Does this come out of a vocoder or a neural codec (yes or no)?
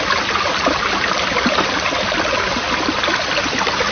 no